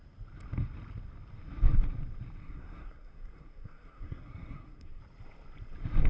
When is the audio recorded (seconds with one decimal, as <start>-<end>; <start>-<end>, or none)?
0.0-2.4; 5.0-6.1